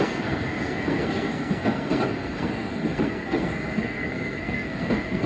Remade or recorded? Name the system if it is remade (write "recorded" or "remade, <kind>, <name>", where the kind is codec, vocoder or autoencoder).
remade, codec, SNAC